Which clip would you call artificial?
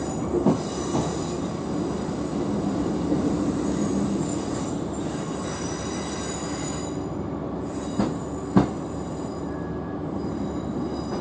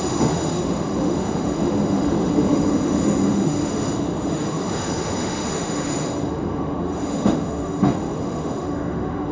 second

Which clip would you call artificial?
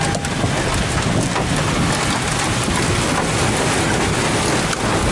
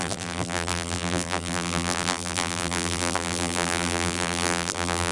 second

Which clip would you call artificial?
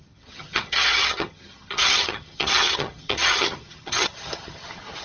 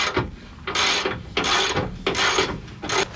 first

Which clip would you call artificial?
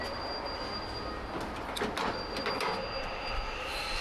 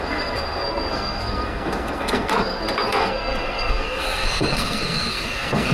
second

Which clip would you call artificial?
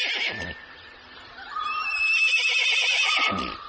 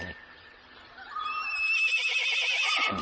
first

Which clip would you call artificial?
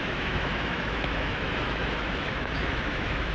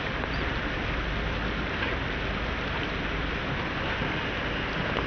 first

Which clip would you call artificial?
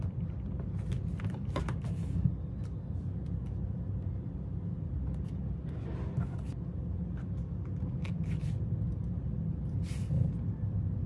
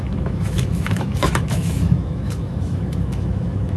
second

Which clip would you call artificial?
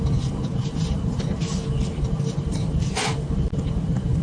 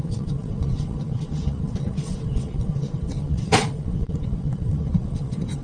second